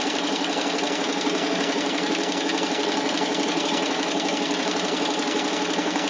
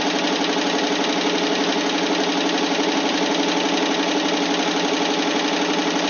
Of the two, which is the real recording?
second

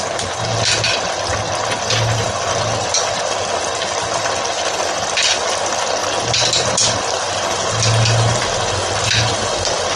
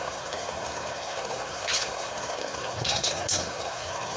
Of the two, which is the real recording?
first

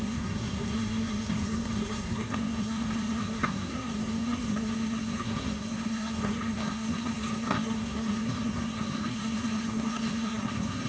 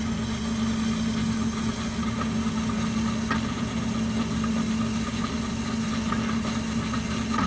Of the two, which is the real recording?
second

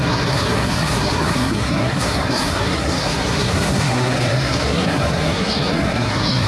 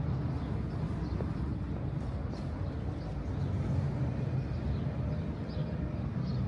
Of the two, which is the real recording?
second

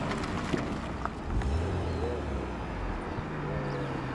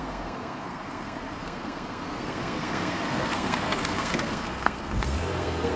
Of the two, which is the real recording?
first